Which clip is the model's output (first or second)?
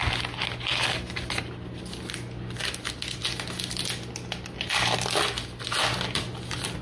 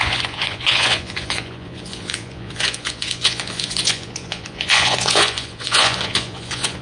second